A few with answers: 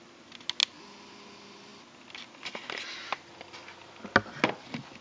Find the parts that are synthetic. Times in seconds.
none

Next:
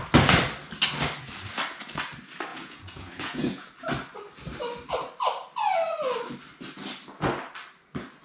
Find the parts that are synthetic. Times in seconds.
2.5-3.7 (vocoder, Vocos)

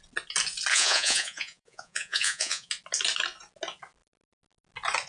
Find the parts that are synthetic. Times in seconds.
0.7-2.7 (vocoder, Vocos)

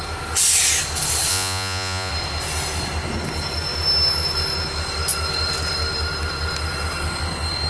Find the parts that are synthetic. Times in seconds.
1.3-2.1 (vocoder, Vocos)

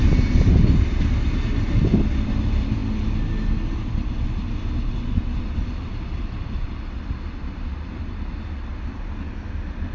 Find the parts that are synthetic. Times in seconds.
none

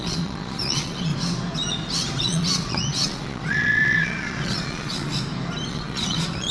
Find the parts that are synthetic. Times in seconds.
0.0-1.1 (vocoder, Vocos); 2.2-5.1; 5.7-6.5

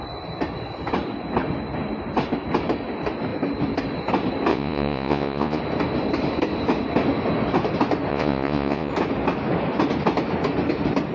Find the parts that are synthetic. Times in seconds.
4.5-5.6 (vocoder, Vocos); 8.1-8.9

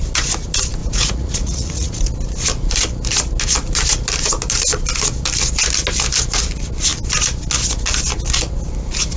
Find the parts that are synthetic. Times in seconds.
0.8-2.0 (vocoder, Vocos)